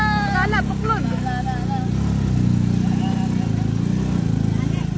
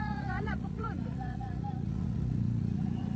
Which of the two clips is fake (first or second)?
second